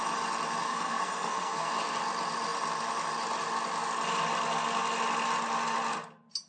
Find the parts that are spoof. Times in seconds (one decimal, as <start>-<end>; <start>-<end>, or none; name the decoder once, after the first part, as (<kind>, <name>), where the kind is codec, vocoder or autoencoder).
0.6-1.7 (codec, SNAC)